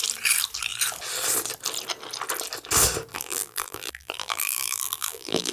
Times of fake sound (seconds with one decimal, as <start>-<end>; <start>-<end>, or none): 3.1-5.5